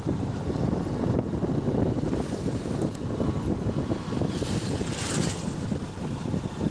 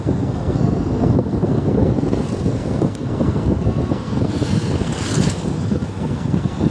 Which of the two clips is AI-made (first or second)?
second